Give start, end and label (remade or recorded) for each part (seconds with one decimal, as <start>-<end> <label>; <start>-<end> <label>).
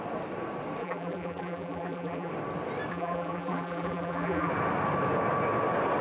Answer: 0.0-0.8 recorded; 0.8-2.3 remade; 2.3-2.9 recorded; 2.9-4.5 remade; 4.5-6.0 recorded